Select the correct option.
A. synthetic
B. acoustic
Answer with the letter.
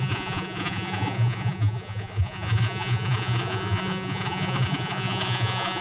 A